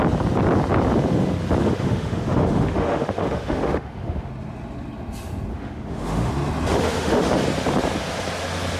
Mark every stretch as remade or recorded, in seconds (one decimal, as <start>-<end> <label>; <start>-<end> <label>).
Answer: 0.0-1.6 recorded; 1.6-4.3 remade; 4.3-5.5 recorded; 5.5-6.3 remade; 6.3-6.7 recorded; 6.7-7.3 remade; 7.3-8.8 recorded